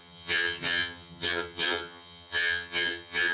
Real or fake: fake